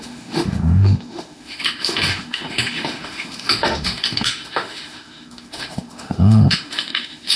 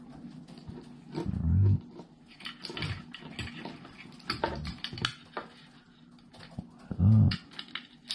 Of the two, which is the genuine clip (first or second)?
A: second